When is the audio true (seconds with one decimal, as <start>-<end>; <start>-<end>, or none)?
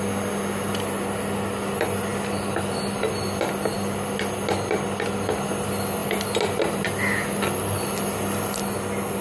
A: 0.0-9.2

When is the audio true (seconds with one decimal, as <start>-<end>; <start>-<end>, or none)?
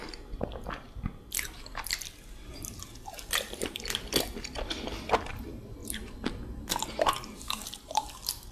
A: 5.8-6.7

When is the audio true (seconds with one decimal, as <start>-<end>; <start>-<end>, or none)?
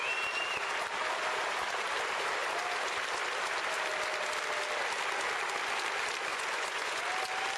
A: 0.0-6.3; 7.0-7.6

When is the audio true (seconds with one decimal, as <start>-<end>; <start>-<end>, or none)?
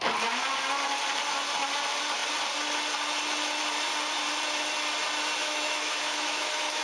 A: 0.0-5.4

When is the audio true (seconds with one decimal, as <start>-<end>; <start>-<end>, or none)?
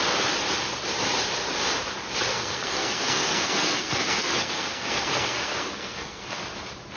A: 0.0-2.3; 6.4-7.0